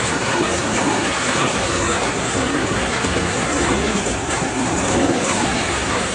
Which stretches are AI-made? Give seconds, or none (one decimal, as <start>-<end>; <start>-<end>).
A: 0.0-6.1